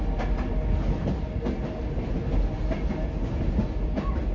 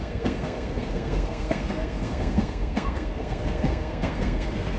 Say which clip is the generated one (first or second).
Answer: second